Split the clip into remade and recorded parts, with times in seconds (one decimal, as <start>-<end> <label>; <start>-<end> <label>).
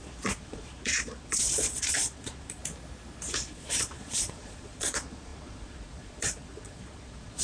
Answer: 0.0-2.6 remade; 2.6-3.5 recorded; 3.5-7.4 remade